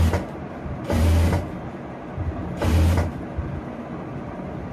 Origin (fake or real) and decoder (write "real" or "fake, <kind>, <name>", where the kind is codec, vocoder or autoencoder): real